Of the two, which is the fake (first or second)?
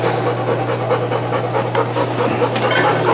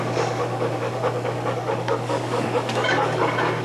second